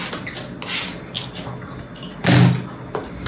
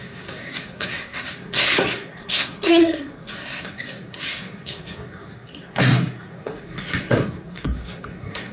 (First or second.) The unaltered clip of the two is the first